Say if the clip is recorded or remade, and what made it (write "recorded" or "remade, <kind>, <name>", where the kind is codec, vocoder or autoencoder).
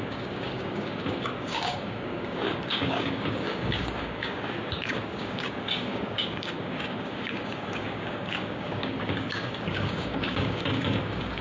remade, codec, DAC